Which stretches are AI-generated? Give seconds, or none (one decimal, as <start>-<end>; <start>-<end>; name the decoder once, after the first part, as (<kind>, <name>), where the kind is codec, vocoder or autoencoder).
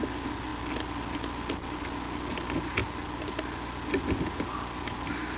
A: none